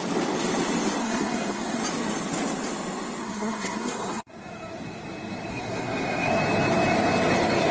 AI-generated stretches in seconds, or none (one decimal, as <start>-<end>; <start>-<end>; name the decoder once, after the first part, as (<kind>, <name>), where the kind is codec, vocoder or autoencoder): 1.0-1.8 (codec, SNAC); 3.2-4.3; 5.5-6.3